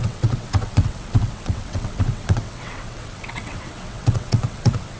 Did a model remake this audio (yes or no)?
yes